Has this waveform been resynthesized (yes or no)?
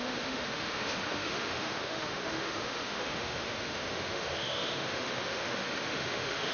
yes